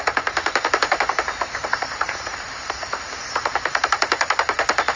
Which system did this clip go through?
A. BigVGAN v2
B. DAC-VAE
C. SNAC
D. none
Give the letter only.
A